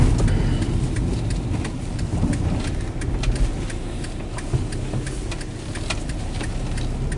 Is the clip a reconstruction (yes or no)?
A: no